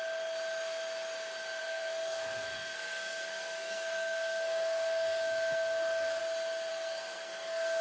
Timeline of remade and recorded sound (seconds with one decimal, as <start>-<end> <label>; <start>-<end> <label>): 0.0-1.6 recorded; 1.6-6.2 remade; 6.2-6.7 recorded; 6.7-7.8 remade